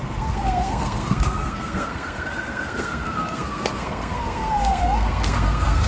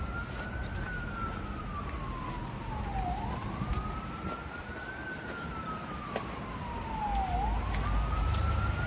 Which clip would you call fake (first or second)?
first